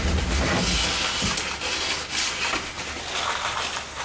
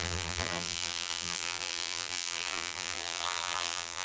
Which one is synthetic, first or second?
second